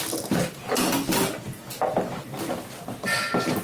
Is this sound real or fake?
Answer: real